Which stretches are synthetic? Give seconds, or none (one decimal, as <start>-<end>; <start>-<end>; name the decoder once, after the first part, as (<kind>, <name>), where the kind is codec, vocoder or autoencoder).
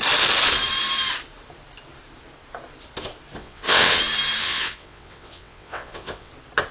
3.4-4.0 (vocoder, WaveNeXt); 4.4-6.3